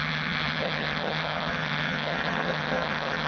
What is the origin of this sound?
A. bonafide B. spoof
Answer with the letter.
B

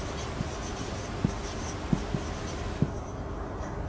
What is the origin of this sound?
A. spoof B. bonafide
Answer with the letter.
B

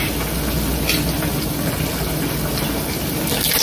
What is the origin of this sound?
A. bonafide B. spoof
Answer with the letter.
A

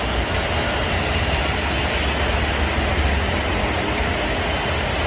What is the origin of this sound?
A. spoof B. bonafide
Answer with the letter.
B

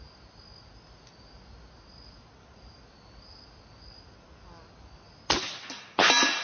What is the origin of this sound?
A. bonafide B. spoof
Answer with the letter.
A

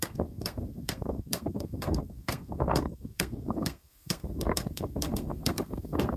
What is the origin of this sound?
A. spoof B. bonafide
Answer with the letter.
A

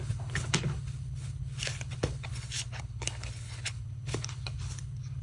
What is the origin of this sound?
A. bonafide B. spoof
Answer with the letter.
B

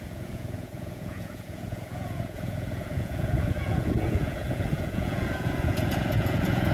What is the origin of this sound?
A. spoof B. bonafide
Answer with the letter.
A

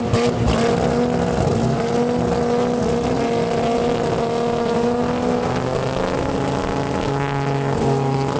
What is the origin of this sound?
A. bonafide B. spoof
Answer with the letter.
A